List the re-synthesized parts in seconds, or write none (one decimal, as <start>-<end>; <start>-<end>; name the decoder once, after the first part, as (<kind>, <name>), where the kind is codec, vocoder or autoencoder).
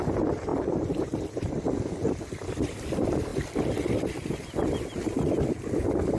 0.5-1.5 (vocoder, BigVGAN v2)